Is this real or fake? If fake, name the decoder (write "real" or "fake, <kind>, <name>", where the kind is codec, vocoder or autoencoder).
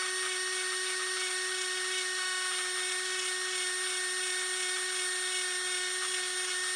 real